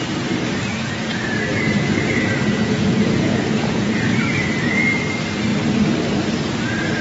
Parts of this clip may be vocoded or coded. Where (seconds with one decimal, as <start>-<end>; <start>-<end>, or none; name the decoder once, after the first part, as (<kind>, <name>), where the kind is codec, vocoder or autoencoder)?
0.7-4.7 (vocoder, Vocos)